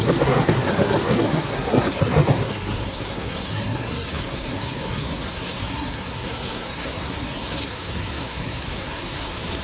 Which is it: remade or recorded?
remade